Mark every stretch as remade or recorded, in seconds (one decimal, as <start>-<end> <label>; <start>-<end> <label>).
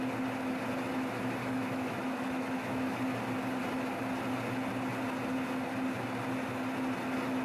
0.0-1.4 recorded; 1.4-3.0 remade; 3.0-7.4 recorded